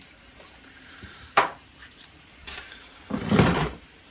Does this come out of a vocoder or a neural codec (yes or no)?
yes